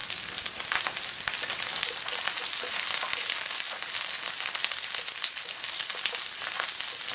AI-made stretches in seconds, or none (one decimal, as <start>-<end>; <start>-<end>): none